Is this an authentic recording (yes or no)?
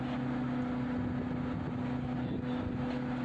yes